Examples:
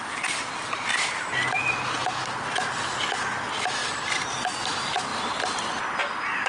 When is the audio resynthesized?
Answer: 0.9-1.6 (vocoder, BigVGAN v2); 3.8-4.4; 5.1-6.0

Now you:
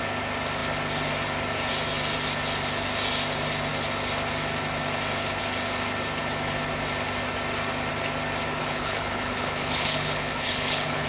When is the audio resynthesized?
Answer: 8.6-11.1 (codec, HILCodec)

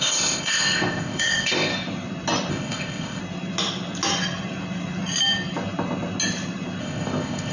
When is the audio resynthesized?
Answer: 0.0-1.7 (codec, ZipCodec); 2.5-3.2; 6.8-7.5

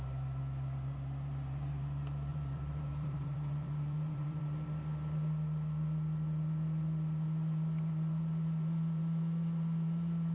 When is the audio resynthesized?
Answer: 2.3-4.4 (vocoder, BigVGAN v2)

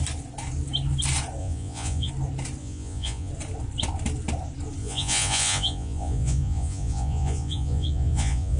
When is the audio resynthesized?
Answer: 1.4-2.1 (vocoder, Vocos); 2.6-3.3; 4.8-8.6

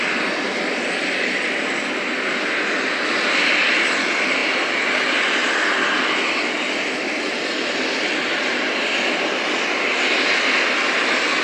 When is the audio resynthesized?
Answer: none